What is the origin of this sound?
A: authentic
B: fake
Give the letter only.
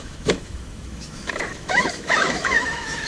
B